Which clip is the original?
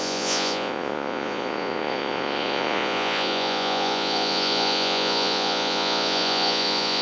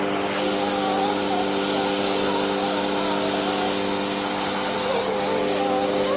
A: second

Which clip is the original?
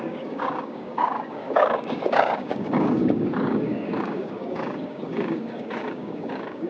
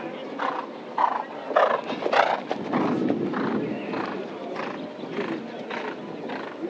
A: second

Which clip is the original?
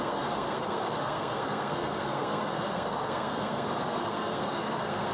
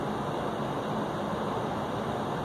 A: second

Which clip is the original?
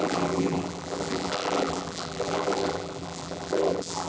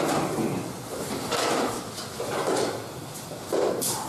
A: second